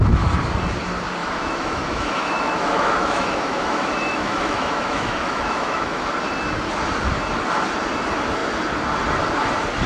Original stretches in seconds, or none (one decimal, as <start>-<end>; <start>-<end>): 0.0-1.2; 6.1-9.9